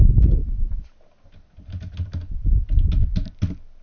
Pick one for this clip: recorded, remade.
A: recorded